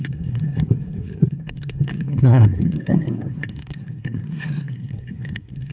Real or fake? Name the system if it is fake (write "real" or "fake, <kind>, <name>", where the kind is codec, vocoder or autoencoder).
fake, codec, SNAC